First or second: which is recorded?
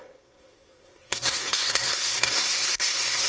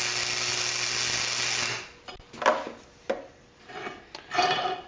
second